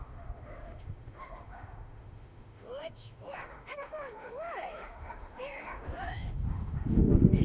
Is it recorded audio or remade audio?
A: remade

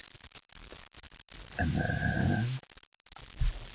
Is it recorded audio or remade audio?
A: recorded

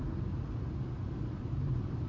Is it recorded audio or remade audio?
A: recorded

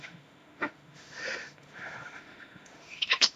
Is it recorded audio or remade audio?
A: remade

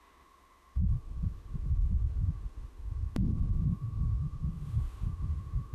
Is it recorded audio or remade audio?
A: remade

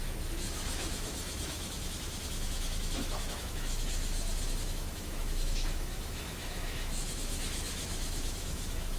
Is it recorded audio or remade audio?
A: remade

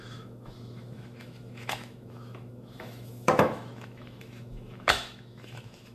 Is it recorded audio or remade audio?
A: remade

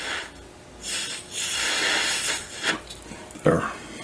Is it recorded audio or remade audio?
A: recorded